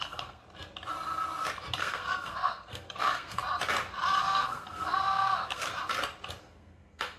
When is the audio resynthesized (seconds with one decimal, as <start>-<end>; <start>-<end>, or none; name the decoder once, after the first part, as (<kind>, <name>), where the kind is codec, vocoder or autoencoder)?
0.0-0.4 (codec, SNAC); 1.8-3.4; 4.2-5.7; 6.4-7.2